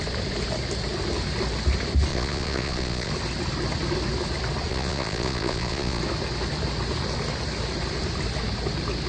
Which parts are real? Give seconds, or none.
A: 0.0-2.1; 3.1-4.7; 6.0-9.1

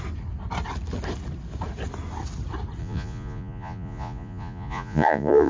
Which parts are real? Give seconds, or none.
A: 0.0-2.8

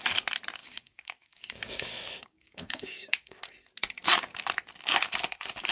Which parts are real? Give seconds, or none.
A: 0.0-0.6; 3.4-5.7

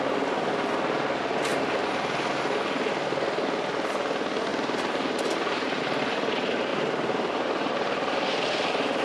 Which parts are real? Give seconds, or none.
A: 0.0-4.5; 5.8-6.7